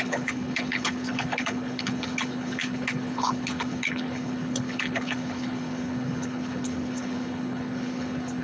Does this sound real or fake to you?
fake